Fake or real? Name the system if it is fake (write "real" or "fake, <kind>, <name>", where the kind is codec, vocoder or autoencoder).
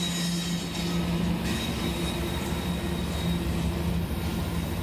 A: real